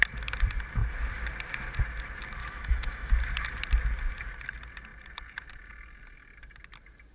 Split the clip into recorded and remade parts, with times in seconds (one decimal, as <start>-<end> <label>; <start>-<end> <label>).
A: 0.0-2.4 recorded; 2.4-3.1 remade; 3.1-7.1 recorded